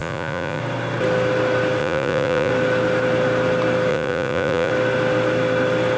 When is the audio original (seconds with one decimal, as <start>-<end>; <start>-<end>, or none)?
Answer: 0.6-1.8; 2.5-3.9; 4.7-6.0